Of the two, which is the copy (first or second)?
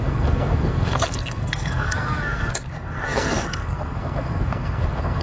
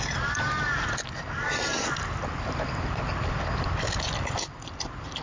first